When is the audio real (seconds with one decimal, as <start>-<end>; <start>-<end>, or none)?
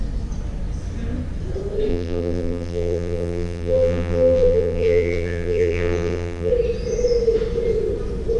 0.0-1.9; 6.5-8.4